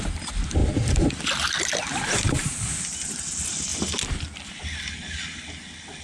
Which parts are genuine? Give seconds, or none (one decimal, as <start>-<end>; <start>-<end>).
0.0-6.0